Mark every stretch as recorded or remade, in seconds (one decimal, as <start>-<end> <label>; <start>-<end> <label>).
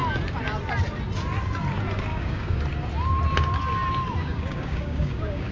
0.0-2.1 recorded; 2.1-2.6 remade; 2.6-4.2 recorded; 4.2-5.5 remade